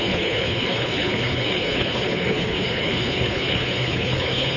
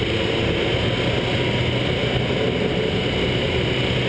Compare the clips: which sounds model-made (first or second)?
first